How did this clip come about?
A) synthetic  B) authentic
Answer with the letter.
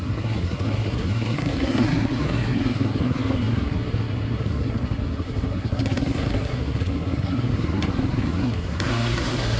A